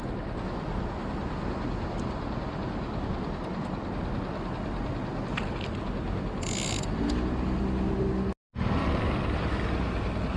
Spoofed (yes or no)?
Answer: no